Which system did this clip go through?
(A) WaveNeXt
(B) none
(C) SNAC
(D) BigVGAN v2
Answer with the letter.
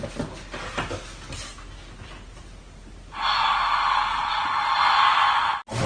B